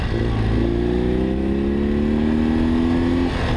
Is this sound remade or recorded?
recorded